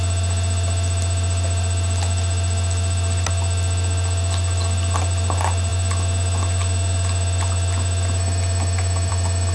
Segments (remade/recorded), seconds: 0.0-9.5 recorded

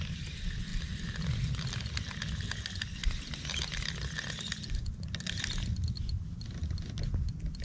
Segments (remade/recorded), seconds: 0.0-7.6 recorded

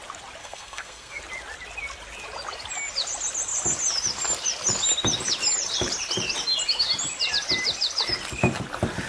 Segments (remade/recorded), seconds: 0.0-0.4 recorded; 0.4-1.2 remade; 1.2-9.1 recorded

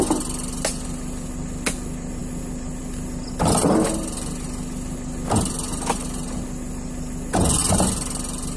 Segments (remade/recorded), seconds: 0.0-8.6 recorded

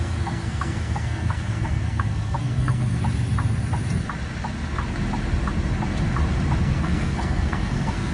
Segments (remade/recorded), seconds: 0.0-3.0 remade; 3.0-6.6 recorded; 6.6-8.1 remade

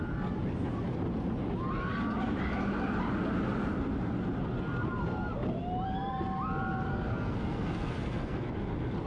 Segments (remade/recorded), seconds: 0.0-6.9 recorded; 6.9-8.5 remade; 8.5-9.1 recorded

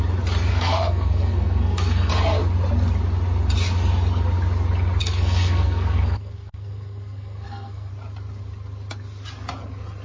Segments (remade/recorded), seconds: 0.0-0.5 recorded; 0.5-2.1 remade; 2.1-5.0 recorded; 5.0-7.9 remade; 7.9-10.0 recorded

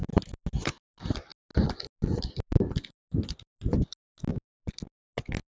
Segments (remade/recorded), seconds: 0.0-5.6 recorded